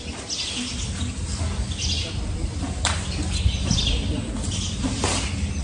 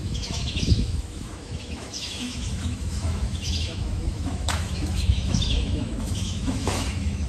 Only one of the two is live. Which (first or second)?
first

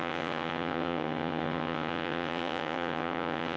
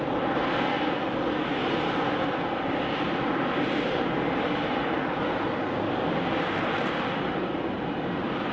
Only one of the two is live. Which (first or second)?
second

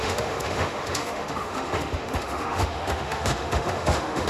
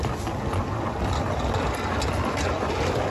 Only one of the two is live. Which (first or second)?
second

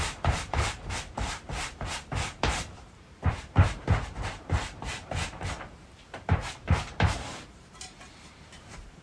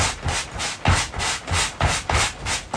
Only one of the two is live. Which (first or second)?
second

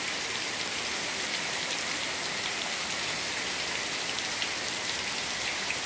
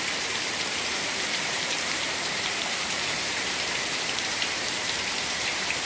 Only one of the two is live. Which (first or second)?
first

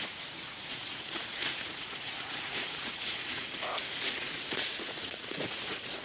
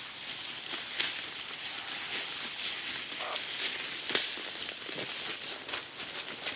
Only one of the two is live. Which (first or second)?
second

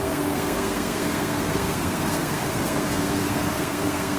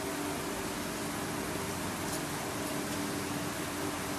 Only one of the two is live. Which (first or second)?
second